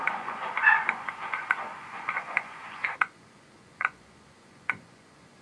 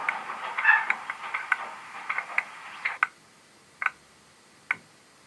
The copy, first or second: first